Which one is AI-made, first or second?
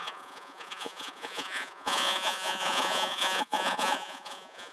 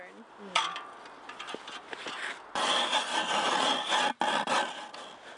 first